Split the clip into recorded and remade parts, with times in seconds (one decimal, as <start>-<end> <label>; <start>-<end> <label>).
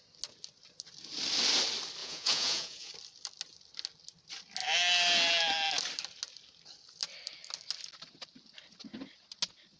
0.0-2.0 recorded; 2.0-2.9 remade; 2.9-9.8 recorded